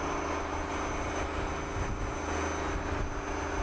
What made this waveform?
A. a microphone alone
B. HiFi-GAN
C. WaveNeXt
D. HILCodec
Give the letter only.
A